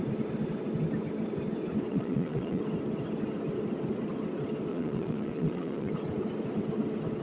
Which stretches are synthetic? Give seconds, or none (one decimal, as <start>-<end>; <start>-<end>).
1.9-2.6; 4.7-5.9